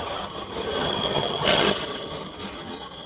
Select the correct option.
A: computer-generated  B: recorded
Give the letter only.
A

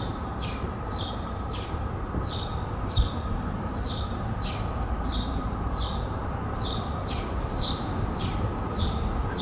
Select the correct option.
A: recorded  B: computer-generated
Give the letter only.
B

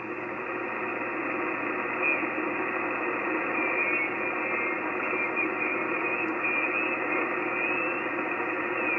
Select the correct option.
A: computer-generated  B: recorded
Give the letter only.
B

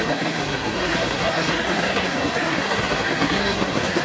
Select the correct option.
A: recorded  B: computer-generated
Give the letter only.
B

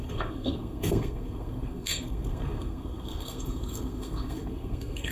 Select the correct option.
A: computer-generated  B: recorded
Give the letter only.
A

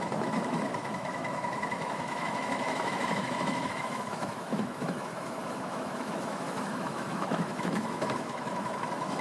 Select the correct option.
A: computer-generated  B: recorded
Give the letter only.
A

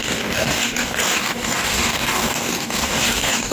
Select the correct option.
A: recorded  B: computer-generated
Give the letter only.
B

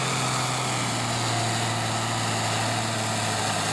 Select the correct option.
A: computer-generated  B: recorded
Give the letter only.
B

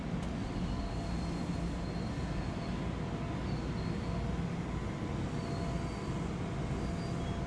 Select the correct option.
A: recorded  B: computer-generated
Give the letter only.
A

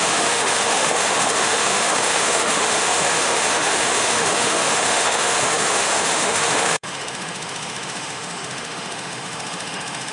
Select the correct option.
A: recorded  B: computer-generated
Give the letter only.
B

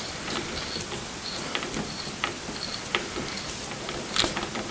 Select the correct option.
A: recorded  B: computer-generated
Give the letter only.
A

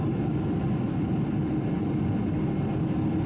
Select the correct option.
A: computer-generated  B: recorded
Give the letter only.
B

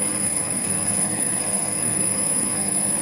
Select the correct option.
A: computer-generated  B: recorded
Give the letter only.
A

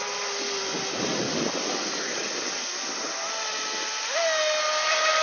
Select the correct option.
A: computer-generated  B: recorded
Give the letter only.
B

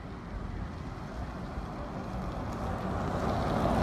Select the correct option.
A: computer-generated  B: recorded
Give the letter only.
B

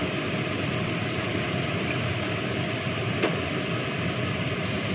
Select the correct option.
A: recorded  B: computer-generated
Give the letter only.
B